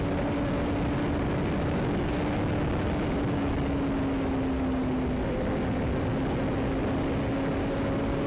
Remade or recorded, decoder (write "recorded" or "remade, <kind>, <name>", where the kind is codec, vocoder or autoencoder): recorded